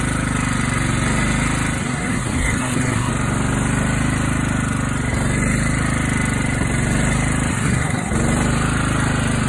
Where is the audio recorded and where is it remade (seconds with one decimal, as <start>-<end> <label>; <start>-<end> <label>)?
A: 0.0-1.8 recorded; 1.8-3.1 remade; 3.1-7.5 recorded; 7.5-8.1 remade; 8.1-9.5 recorded